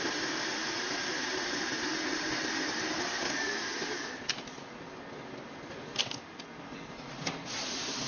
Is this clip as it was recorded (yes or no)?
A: yes